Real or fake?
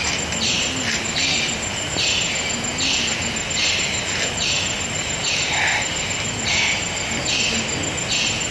real